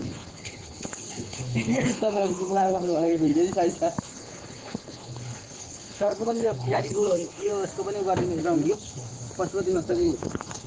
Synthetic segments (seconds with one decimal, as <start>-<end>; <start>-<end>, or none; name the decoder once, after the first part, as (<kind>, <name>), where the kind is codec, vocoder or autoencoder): 0.0-3.3 (codec, HILCodec); 4.0-7.5; 8.7-9.1; 9.7-10.7